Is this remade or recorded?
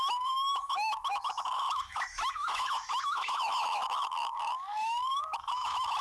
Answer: remade